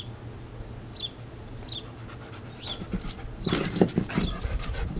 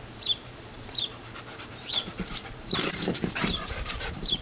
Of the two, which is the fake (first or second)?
second